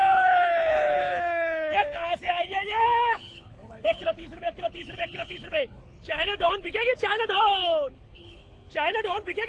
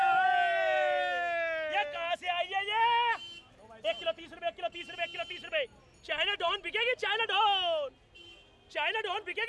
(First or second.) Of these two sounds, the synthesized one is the first